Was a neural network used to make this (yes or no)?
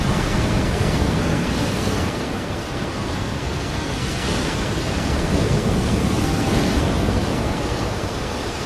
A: yes